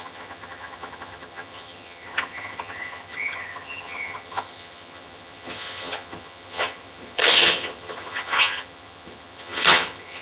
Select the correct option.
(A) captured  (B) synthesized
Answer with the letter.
B